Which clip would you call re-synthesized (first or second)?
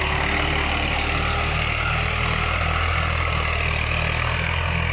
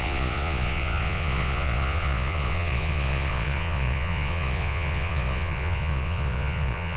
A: second